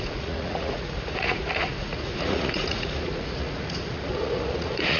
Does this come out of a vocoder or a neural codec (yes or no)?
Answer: yes